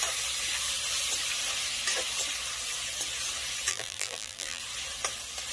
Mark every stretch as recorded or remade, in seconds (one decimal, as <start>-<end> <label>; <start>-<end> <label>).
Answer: 0.0-3.7 recorded; 3.7-4.6 remade; 4.6-5.5 recorded